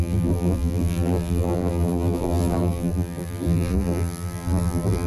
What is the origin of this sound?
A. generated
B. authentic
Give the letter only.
A